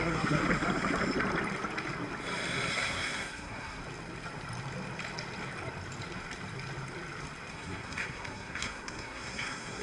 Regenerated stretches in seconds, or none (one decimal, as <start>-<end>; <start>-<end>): 0.0-0.4; 2.7-3.8; 7.5-9.8